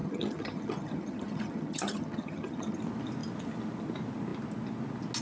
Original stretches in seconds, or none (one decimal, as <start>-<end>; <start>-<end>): 2.8-5.2